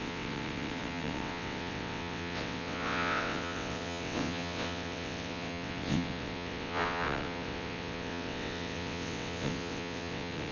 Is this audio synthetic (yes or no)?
yes